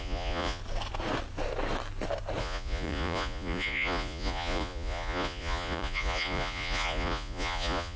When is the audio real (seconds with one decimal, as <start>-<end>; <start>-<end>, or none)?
0.6-2.4